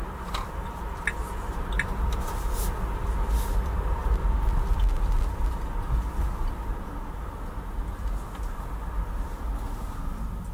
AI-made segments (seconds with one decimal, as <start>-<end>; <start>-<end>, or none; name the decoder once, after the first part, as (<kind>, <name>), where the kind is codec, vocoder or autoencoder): none